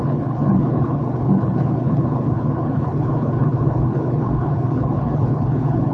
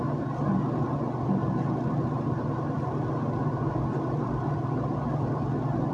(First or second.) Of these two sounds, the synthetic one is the first